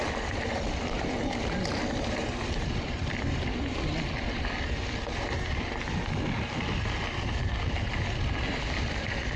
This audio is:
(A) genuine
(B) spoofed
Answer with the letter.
A